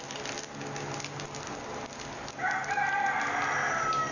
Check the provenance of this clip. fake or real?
real